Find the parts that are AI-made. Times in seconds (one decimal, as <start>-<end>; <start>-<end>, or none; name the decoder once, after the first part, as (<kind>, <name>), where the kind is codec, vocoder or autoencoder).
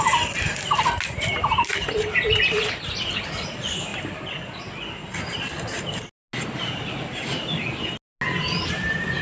none